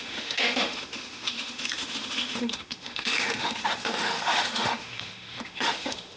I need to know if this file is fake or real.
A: fake